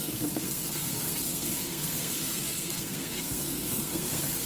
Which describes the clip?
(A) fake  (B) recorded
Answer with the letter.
A